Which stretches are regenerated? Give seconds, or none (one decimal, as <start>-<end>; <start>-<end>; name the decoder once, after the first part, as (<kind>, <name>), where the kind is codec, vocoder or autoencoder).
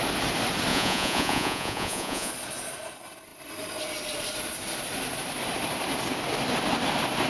0.7-2.3 (vocoder, Vocos)